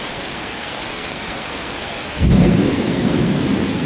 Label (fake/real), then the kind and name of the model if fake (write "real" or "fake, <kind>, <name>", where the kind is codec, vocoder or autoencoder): fake, codec, SNAC